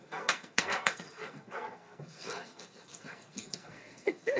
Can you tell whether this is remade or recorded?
remade